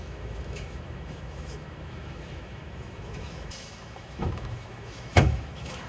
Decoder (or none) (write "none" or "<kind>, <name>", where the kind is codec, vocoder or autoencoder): autoencoder, DAC-VAE